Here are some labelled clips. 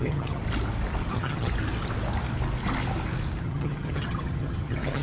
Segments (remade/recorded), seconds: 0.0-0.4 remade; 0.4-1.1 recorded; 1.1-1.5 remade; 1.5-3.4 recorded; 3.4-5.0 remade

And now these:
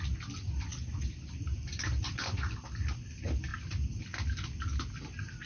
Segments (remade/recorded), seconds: 0.0-5.5 recorded

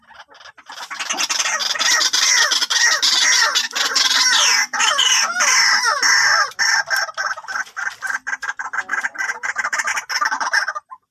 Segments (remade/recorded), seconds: 0.0-8.9 recorded; 8.9-9.9 remade; 9.9-11.1 recorded

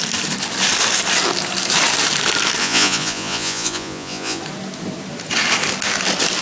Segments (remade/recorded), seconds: 0.0-2.6 recorded; 2.6-4.4 remade; 4.4-6.4 recorded

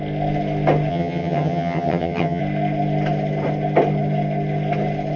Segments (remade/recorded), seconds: 0.0-0.9 recorded; 0.9-2.4 remade; 2.4-5.2 recorded

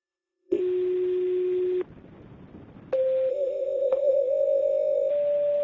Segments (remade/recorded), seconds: 0.0-0.6 remade; 0.6-3.3 recorded; 3.3-5.1 remade; 5.1-5.6 recorded